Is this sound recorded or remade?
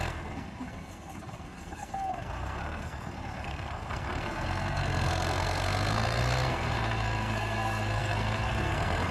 remade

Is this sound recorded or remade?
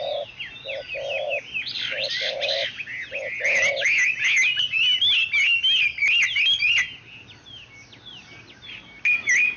recorded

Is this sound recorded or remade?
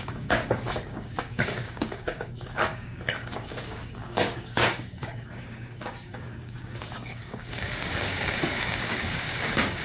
remade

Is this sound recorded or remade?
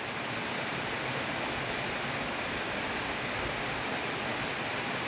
recorded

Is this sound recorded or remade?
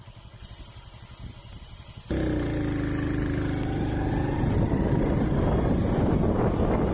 recorded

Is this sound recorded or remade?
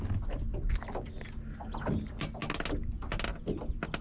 recorded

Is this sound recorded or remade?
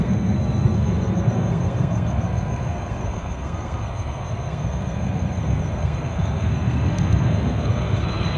remade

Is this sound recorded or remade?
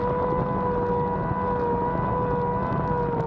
recorded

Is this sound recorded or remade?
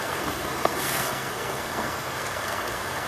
remade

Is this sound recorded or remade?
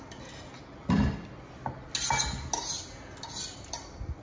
recorded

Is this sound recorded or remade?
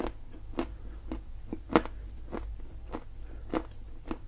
recorded